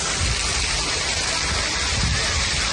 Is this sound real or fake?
real